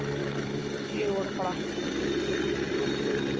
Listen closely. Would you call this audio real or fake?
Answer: fake